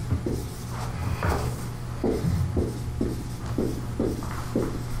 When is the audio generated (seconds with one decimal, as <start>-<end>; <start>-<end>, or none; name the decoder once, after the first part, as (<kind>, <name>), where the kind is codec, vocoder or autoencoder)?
0.0-0.6 (vocoder, BigVGAN v2)